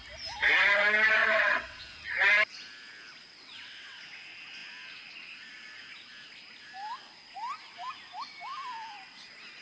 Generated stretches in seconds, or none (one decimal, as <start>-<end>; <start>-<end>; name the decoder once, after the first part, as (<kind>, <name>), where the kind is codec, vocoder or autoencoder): 1.2-1.8 (vocoder, WaveNeXt); 3.3-4.0